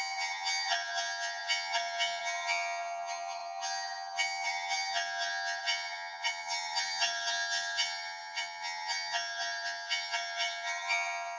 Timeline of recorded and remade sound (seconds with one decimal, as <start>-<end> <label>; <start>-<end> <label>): 0.0-11.4 remade